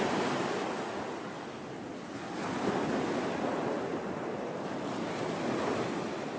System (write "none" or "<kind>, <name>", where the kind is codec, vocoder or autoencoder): none